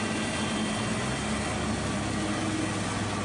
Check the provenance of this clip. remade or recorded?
recorded